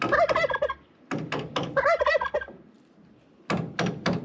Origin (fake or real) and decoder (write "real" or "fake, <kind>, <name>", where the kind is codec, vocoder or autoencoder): real